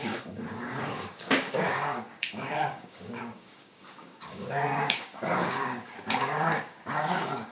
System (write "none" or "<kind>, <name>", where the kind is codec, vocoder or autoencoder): codec, DAC